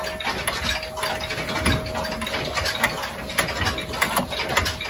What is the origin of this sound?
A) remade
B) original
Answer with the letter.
B